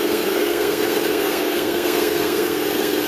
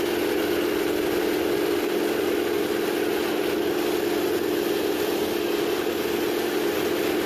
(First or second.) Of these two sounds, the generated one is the first